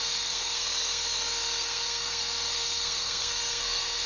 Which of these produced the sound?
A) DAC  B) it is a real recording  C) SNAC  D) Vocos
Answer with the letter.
C